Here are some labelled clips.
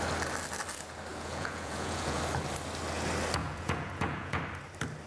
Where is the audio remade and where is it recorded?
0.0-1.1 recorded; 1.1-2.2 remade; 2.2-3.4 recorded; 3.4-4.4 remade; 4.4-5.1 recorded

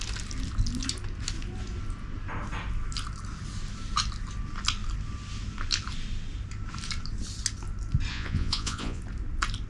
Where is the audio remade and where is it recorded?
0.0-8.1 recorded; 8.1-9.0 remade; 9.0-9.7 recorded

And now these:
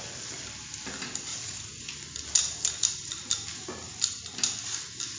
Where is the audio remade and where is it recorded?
0.0-1.3 recorded; 1.3-1.9 remade; 1.9-5.2 recorded

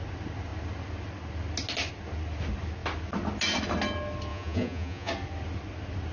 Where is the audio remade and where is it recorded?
0.0-4.3 recorded; 4.3-5.1 remade; 5.1-6.1 recorded

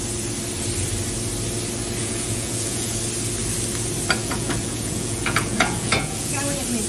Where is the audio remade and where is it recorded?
0.0-2.0 recorded; 2.0-3.0 remade; 3.0-4.2 recorded; 4.2-6.3 remade; 6.3-6.9 recorded

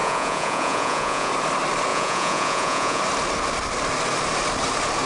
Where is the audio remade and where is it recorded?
0.0-1.3 remade; 1.3-1.9 recorded; 1.9-3.0 remade; 3.0-5.1 recorded